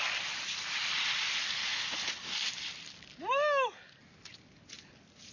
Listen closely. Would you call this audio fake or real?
real